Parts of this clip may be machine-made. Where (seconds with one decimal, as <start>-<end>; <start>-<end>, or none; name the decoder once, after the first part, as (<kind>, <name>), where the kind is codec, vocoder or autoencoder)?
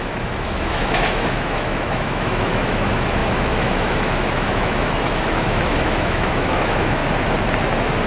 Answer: 0.0-7.0 (autoencoder, DAC-VAE)